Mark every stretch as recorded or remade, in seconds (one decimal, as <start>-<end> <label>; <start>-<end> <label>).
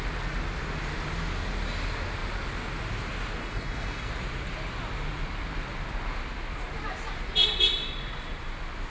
0.0-3.4 recorded; 3.4-4.1 remade; 4.1-8.9 recorded